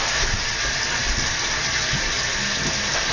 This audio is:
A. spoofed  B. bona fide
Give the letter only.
B